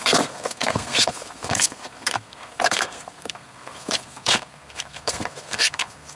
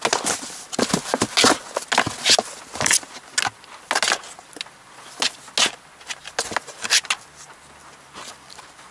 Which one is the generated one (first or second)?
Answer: first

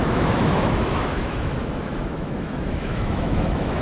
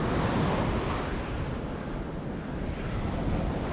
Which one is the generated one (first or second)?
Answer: first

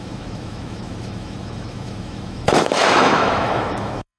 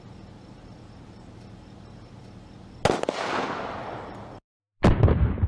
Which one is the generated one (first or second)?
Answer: first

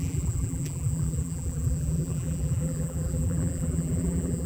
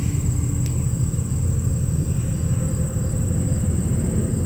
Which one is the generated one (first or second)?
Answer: first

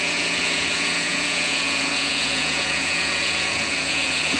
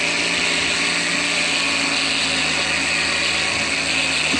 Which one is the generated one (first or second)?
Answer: first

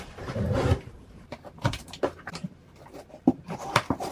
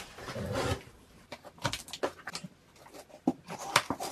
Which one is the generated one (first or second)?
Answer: first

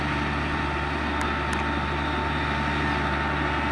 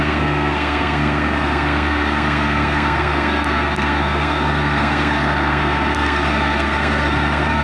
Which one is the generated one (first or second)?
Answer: second